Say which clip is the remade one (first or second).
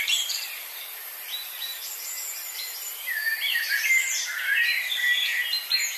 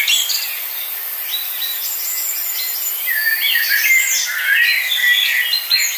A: first